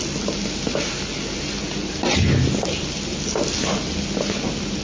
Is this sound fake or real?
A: real